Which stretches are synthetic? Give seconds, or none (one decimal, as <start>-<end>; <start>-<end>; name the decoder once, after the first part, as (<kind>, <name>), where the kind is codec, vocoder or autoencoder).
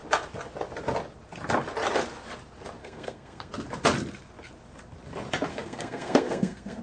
2.8-3.5 (codec, SNAC); 5.5-6.8